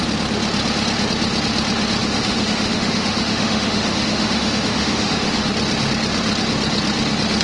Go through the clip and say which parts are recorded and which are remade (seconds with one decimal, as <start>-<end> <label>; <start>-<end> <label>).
0.0-2.0 recorded; 2.0-5.5 remade; 5.5-7.4 recorded